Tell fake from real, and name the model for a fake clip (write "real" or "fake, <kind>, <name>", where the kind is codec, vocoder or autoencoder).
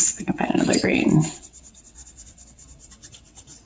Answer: fake, vocoder, WaveNeXt